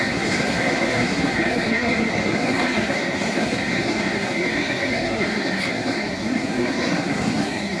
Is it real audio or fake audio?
fake